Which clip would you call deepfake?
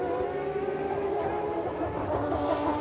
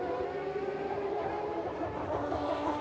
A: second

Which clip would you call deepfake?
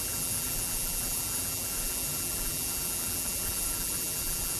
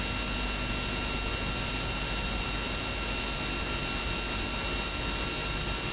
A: first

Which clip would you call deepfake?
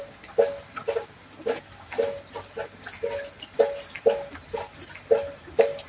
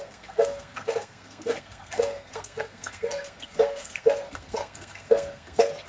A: second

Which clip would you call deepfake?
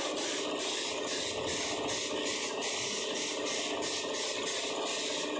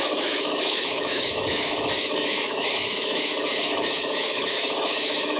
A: second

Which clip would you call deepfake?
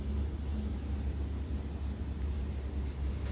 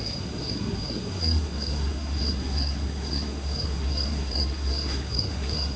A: second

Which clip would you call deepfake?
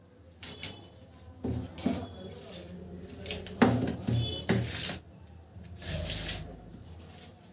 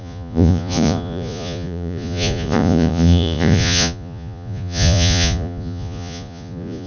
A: second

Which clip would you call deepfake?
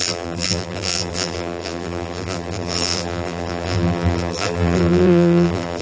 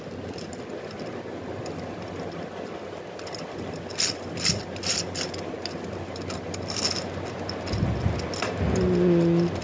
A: first